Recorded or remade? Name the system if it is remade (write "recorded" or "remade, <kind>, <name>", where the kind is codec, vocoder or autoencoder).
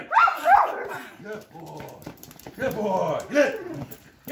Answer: recorded